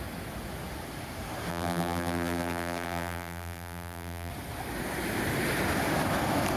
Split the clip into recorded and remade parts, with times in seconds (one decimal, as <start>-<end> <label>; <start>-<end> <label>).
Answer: 0.0-1.5 recorded; 1.5-4.3 remade; 4.3-6.6 recorded